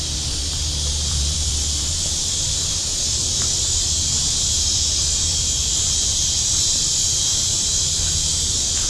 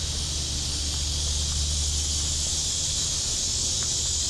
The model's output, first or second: first